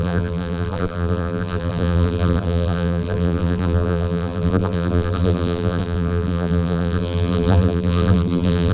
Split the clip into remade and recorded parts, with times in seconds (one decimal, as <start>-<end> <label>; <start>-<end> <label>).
0.0-8.7 remade